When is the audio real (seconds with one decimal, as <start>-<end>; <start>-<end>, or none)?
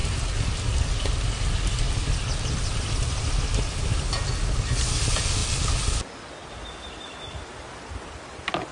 0.0-8.7